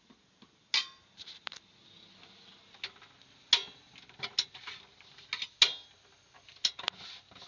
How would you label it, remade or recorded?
recorded